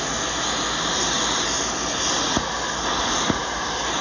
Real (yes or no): yes